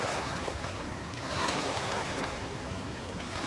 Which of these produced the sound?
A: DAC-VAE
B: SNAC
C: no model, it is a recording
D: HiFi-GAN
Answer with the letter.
B